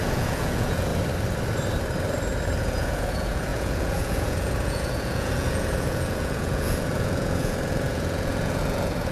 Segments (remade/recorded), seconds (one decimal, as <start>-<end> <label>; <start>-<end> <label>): 0.0-0.9 remade; 0.9-2.6 recorded; 2.6-9.1 remade

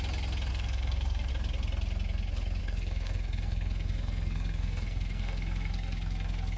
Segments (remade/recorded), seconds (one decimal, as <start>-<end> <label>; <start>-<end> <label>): 0.0-0.5 recorded; 0.5-1.3 remade; 1.3-2.6 recorded; 2.6-6.6 remade

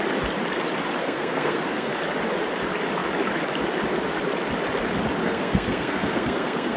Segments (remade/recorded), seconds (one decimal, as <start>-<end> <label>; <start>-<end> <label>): 0.0-1.0 recorded; 1.0-1.9 remade; 1.9-5.2 recorded; 5.2-6.8 remade

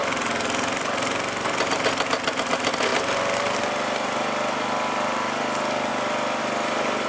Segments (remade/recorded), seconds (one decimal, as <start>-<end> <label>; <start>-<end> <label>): 0.0-7.1 recorded

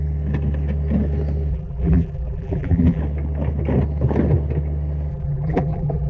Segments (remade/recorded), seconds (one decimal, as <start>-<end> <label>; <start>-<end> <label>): 0.0-1.5 recorded; 1.5-3.0 remade; 3.0-5.1 recorded; 5.1-6.1 remade

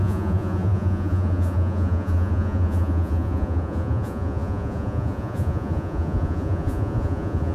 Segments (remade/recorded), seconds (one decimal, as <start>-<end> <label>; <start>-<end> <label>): 0.0-7.5 remade

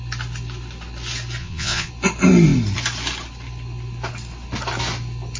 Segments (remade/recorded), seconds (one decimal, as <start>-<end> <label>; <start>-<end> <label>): 0.0-1.4 recorded; 1.4-1.9 remade; 1.9-5.4 recorded

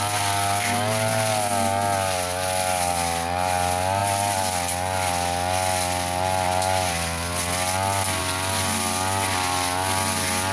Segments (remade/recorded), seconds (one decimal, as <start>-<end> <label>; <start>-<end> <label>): 0.0-10.5 recorded